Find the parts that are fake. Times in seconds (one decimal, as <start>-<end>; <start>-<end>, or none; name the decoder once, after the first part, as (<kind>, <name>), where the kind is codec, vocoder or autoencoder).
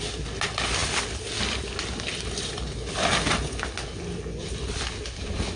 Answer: none